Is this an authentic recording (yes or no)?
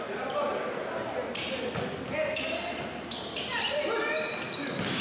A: yes